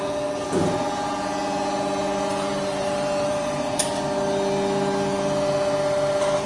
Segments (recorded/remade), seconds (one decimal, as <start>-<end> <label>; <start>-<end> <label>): 0.0-2.5 recorded; 2.5-3.9 remade; 3.9-6.5 recorded